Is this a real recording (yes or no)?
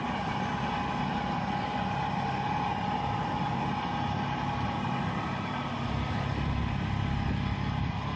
yes